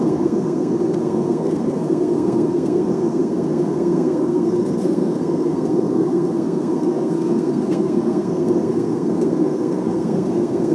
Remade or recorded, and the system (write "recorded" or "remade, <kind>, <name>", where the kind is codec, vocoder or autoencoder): remade, codec, SNAC